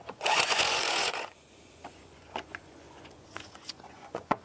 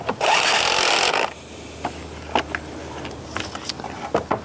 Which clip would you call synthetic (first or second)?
first